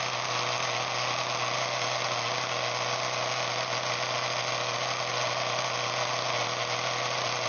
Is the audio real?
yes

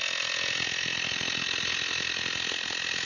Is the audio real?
yes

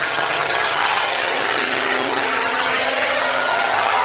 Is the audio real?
no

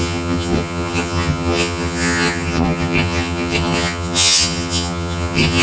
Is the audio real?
no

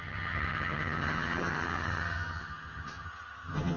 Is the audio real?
no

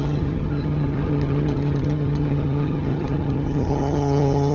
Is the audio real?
no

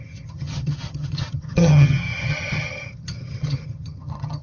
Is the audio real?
no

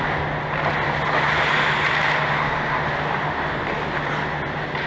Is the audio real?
yes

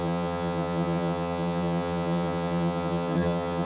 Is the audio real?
no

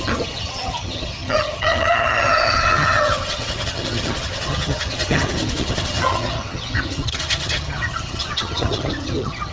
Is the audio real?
no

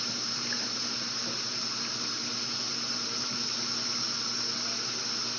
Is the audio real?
yes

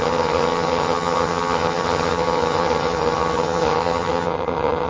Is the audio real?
no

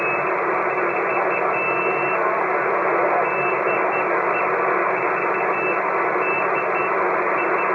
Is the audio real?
yes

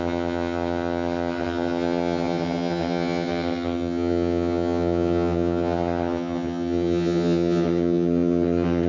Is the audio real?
no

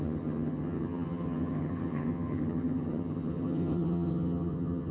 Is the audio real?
no